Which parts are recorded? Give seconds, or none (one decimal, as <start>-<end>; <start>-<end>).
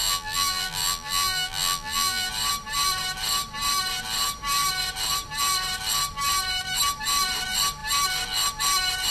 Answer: 2.3-9.1